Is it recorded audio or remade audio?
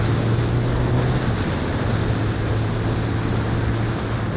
recorded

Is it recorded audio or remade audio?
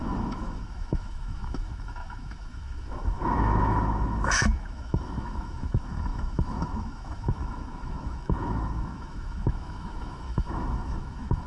remade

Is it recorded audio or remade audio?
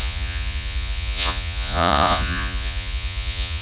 remade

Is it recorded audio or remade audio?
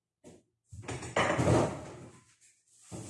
recorded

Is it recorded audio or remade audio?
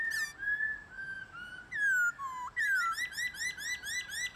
recorded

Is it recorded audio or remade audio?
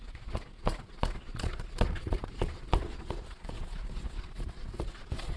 remade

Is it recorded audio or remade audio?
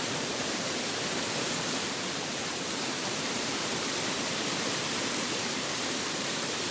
remade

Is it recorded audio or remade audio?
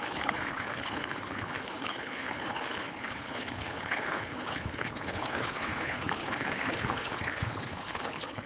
remade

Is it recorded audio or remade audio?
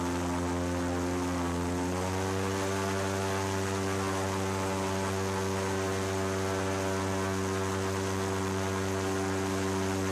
recorded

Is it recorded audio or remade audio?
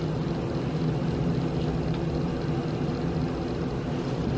recorded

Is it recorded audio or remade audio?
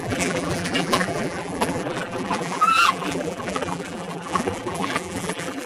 remade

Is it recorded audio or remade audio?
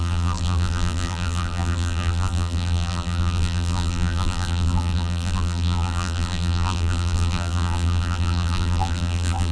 remade